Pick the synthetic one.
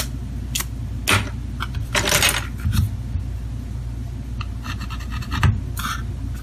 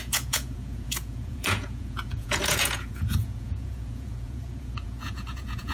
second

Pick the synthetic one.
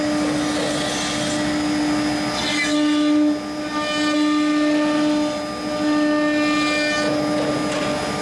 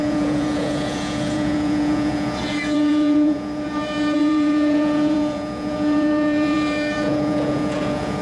second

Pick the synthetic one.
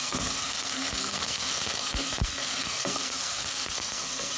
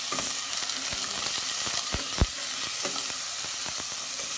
first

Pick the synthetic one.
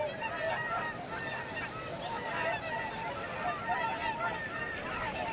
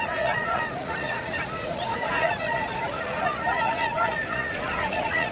second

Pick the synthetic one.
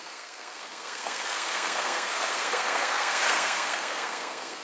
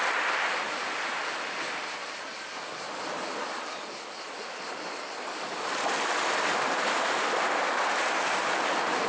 first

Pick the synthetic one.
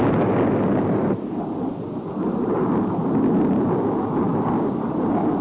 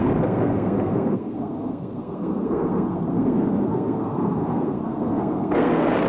second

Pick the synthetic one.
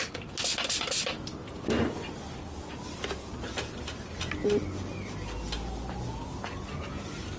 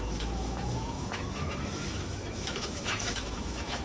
second